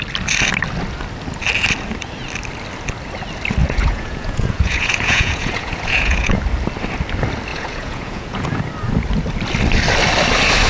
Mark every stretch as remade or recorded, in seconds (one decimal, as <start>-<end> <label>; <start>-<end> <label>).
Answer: 0.0-3.6 recorded; 3.6-6.4 remade; 6.4-7.5 recorded; 7.5-8.6 remade; 8.6-10.7 recorded